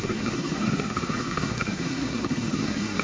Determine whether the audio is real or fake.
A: fake